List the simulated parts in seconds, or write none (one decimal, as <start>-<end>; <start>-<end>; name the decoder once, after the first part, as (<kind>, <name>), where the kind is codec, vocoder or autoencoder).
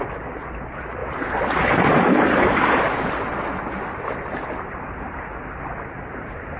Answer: none